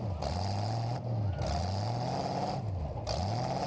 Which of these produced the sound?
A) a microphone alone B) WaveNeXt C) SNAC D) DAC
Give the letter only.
A